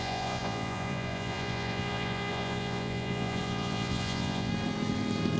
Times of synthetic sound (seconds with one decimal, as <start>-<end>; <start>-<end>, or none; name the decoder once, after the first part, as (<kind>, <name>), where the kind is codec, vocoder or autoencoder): 0.0-4.5 (vocoder, Vocos)